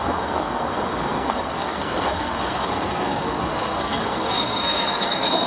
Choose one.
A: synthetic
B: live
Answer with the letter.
A